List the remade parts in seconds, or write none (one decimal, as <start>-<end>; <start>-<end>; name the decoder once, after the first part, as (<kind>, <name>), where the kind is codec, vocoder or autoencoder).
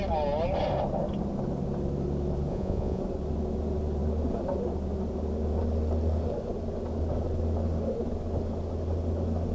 2.5-3.0 (vocoder, Vocos)